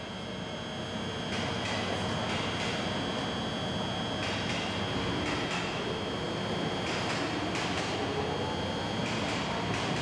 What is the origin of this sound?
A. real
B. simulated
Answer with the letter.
A